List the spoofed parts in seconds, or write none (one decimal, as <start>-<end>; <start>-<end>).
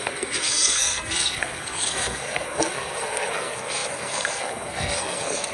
0.0-5.5